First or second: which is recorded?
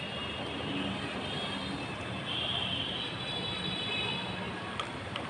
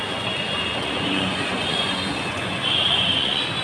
first